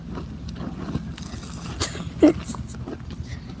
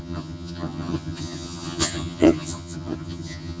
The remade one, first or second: second